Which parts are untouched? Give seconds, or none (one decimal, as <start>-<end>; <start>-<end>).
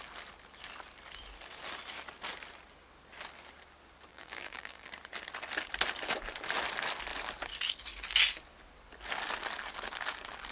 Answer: 0.0-4.1; 4.9-10.5